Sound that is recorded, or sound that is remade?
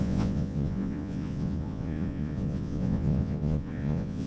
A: remade